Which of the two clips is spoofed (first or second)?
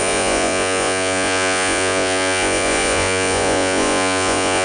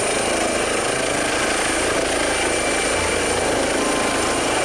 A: first